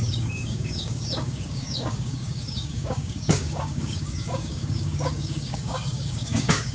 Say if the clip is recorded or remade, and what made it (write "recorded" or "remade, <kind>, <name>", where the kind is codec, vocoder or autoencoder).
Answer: remade, codec, DAC